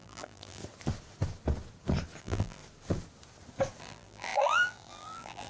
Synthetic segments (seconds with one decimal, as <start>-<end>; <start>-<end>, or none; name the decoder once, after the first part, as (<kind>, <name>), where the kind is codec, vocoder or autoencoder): 0.0-0.6 (vocoder, BigVGAN v2); 2.2-2.6; 3.8-5.5